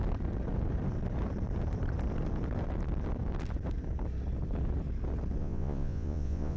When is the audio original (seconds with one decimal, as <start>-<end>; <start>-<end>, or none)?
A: 0.0-5.4